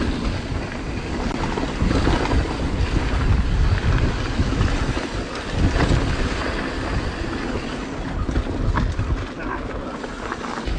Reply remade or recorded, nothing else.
recorded